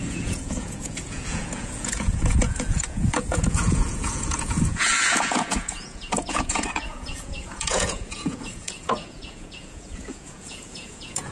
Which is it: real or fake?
fake